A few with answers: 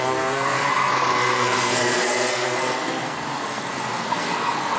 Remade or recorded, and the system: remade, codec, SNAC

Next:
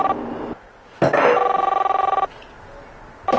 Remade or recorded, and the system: recorded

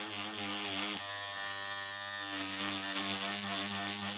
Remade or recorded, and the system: recorded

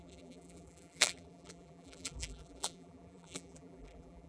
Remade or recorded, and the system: remade, vocoder, BigVGAN v2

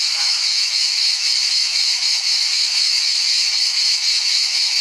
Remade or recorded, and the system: remade, autoencoder, DAC-VAE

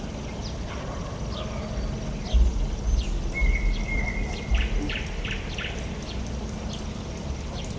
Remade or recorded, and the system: recorded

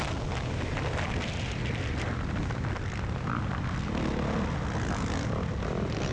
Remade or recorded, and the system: recorded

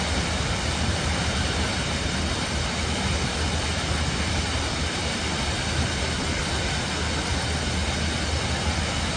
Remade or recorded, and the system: recorded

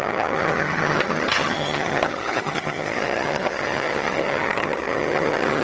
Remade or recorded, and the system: remade, vocoder, HiFi-GAN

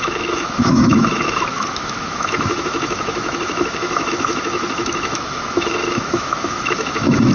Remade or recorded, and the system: remade, autoencoder, DAC-VAE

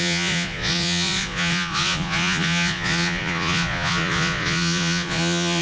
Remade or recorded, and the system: remade, vocoder, Vocos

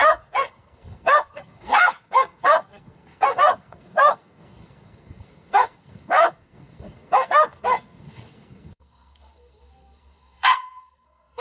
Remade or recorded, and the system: remade, codec, SNAC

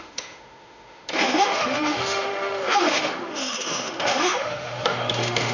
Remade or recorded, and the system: remade, autoencoder, DAC-VAE